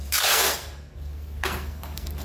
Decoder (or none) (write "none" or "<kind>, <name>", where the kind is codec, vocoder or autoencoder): codec, SNAC